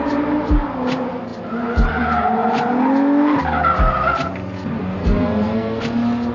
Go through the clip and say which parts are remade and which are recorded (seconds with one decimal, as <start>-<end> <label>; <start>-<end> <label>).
0.0-5.0 recorded; 5.0-5.8 remade; 5.8-6.3 recorded